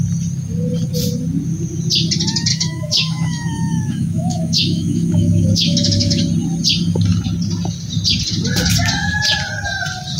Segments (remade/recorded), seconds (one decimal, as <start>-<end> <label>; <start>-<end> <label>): 0.0-2.5 recorded; 2.5-6.2 remade; 6.2-10.2 recorded